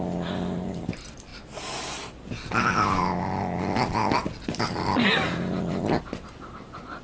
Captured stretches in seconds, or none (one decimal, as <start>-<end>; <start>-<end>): 1.3-3.6